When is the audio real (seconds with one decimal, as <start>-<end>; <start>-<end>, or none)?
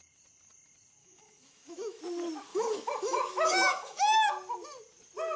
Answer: 0.0-1.0; 2.0-2.5; 4.3-5.4